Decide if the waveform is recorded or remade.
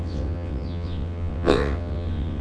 remade